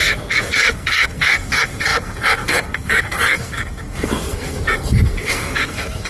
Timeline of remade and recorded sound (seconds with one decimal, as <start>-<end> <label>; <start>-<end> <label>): 0.0-6.1 remade